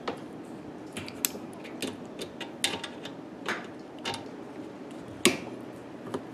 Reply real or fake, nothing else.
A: real